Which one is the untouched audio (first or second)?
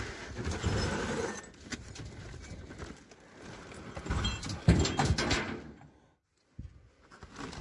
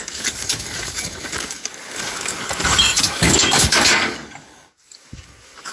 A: first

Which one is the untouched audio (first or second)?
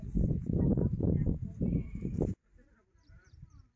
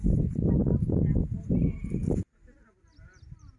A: second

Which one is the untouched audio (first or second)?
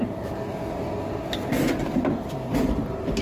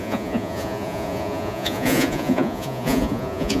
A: first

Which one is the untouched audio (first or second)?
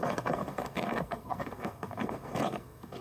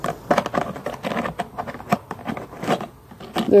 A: second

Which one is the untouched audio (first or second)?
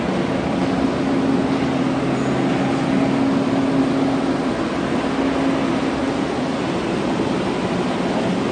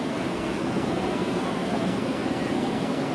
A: first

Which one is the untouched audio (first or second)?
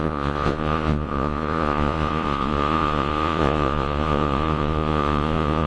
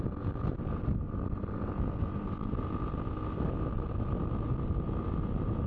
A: second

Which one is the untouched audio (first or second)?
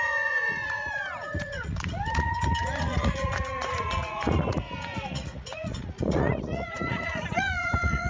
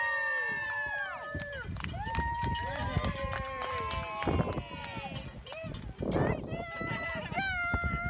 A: second